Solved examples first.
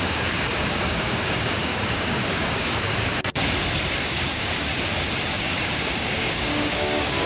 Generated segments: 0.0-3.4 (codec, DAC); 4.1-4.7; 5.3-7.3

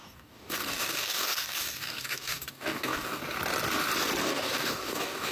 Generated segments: 0.0-3.2 (codec, DAC); 4.2-5.3

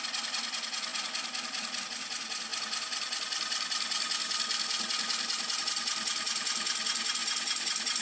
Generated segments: none

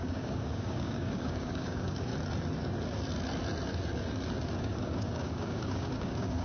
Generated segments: 0.0-2.1 (codec, DAC); 4.6-6.4

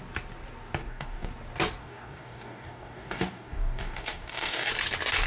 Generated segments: 0.8-1.3 (codec, DAC); 1.8-4.7

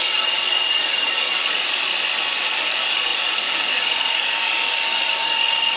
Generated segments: 0.0-1.9 (codec, DAC); 2.5-5.8